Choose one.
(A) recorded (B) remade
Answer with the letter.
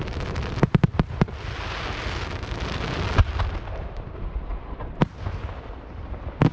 A